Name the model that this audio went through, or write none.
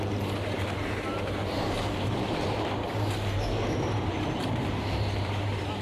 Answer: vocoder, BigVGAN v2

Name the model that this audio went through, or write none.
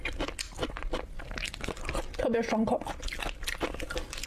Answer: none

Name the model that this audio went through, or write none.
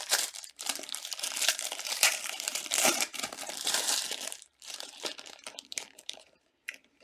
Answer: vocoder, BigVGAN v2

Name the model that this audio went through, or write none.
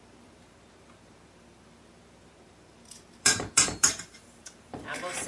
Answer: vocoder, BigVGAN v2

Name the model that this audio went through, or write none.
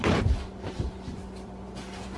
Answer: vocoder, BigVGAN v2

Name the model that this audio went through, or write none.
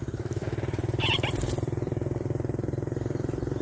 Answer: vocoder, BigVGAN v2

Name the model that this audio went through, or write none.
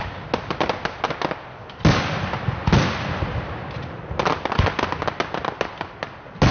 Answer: none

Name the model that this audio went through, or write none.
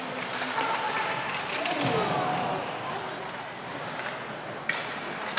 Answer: none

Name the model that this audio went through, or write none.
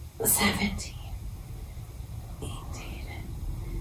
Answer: none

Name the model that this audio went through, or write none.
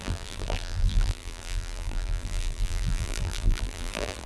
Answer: vocoder, BigVGAN v2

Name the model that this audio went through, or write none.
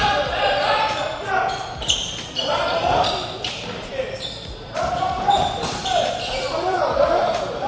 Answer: vocoder, BigVGAN v2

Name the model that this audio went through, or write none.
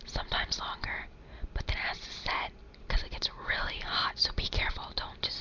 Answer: vocoder, BigVGAN v2